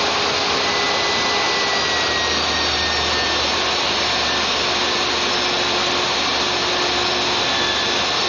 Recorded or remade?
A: recorded